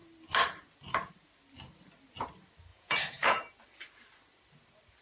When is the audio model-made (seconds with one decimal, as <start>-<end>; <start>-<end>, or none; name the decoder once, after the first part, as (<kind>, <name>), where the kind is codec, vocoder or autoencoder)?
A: 2.7-3.4 (vocoder, Vocos)